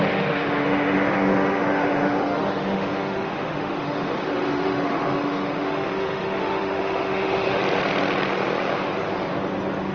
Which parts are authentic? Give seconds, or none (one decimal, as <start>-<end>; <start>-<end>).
7.6-9.9